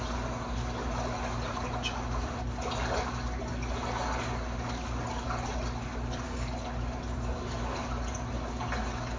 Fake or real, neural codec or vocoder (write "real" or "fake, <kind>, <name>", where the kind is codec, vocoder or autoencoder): real